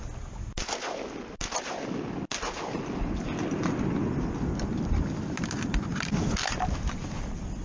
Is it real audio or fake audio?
real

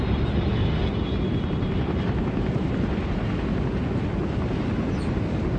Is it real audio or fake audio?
real